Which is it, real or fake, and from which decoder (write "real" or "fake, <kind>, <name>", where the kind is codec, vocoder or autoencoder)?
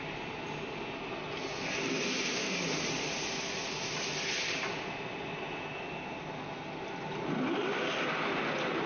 real